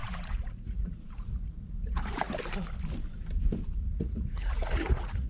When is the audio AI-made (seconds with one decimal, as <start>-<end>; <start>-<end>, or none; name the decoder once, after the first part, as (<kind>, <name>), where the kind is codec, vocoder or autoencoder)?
0.0-2.4 (vocoder, Vocos); 3.8-5.3